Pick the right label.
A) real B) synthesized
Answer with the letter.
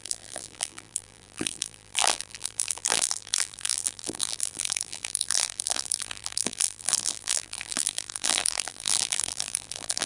B